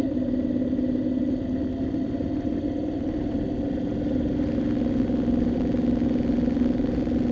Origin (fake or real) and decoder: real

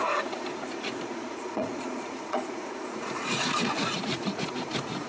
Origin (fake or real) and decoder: fake, vocoder, Vocos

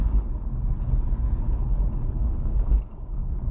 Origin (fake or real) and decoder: fake, codec, HILCodec